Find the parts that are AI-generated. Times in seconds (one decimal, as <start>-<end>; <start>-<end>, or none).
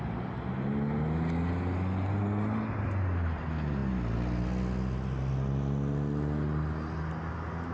none